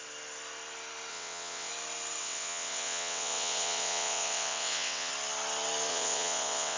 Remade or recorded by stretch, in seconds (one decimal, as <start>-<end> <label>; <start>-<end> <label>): 0.0-1.1 recorded; 1.1-1.7 remade; 1.7-2.2 recorded; 2.2-5.1 remade; 5.1-5.9 recorded; 5.9-6.8 remade